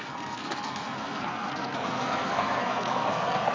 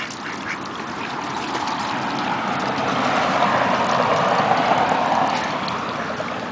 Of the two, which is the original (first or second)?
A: second